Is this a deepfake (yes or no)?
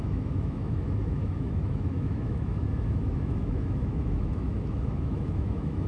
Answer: yes